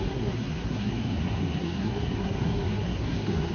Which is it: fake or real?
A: fake